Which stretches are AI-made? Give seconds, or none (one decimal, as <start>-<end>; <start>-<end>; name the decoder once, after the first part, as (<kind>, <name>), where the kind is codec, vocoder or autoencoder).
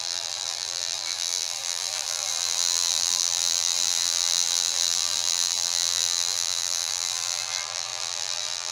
0.0-8.7 (vocoder, BigVGAN v2)